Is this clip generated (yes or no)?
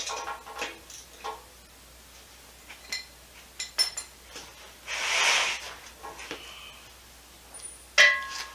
no